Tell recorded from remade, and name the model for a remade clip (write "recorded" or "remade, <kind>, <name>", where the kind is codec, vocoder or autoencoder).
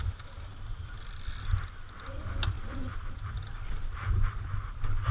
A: recorded